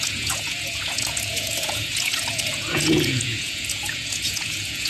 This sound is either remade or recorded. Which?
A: remade